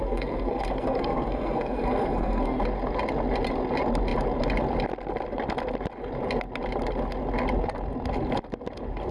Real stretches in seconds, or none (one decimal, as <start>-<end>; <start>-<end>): 2.6-9.1